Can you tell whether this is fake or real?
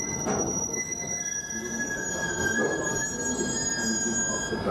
real